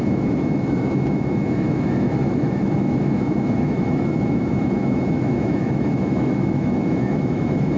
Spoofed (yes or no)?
yes